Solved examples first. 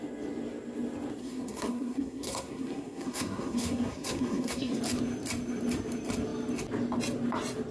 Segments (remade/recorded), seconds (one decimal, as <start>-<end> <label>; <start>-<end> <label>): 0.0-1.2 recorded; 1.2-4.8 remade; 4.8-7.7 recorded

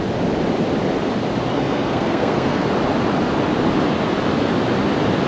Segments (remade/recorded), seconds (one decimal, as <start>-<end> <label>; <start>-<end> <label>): 0.0-1.5 recorded; 1.5-2.7 remade; 2.7-5.3 recorded

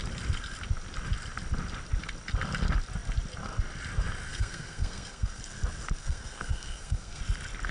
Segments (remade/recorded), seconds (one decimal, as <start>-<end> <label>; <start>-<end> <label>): 0.0-4.3 recorded; 4.3-5.4 remade; 5.4-6.0 recorded; 6.0-7.2 remade; 7.2-7.7 recorded